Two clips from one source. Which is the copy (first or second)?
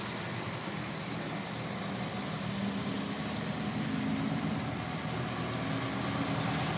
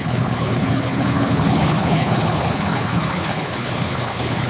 second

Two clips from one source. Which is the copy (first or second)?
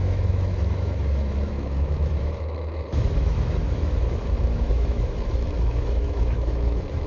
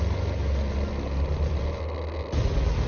first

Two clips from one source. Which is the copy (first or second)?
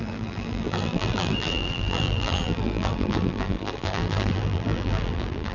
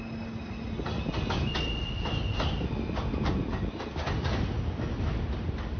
first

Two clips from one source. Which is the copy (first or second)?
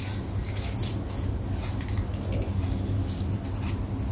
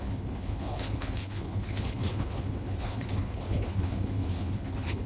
second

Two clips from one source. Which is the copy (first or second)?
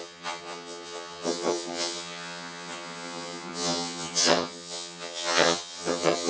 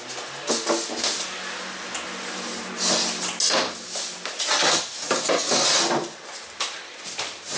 first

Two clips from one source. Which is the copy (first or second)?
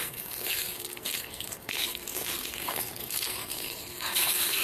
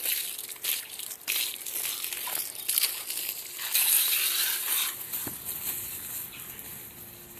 first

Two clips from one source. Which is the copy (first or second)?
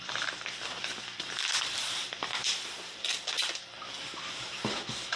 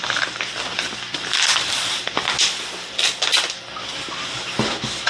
first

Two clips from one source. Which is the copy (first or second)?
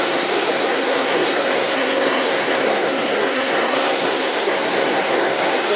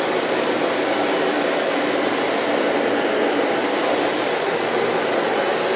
first